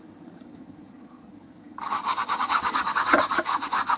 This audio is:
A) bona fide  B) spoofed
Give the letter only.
B